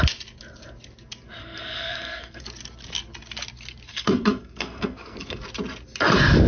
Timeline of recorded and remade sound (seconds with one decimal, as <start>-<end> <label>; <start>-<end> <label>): 0.0-1.4 recorded; 1.4-2.4 remade; 2.4-3.9 recorded; 3.9-5.4 remade; 5.4-6.5 recorded